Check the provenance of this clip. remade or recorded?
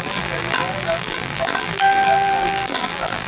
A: remade